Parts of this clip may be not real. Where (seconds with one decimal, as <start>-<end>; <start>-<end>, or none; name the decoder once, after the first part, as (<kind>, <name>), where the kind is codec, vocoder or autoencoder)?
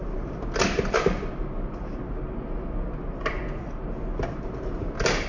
none